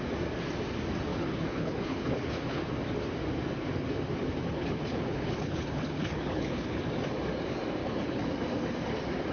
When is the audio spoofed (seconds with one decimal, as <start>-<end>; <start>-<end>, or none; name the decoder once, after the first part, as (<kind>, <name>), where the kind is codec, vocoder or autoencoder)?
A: 1.1-2.6 (codec, HILCodec); 4.4-6.8; 7.8-8.3